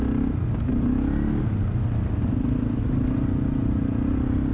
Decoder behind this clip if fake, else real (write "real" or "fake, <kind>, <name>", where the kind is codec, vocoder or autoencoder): real